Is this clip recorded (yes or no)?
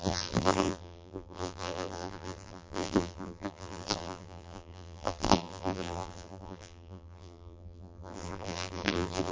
no